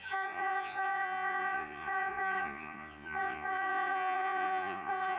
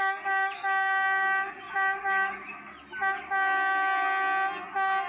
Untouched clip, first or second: second